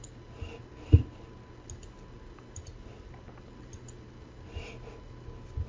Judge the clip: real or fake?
real